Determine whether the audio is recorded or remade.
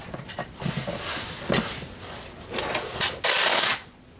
recorded